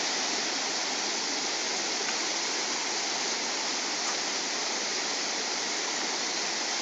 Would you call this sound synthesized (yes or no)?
no